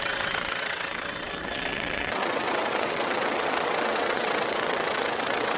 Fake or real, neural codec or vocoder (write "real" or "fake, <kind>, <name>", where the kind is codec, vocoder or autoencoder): fake, vocoder, WaveNeXt